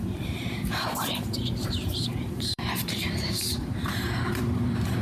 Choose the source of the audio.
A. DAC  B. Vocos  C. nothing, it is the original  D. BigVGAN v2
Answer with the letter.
D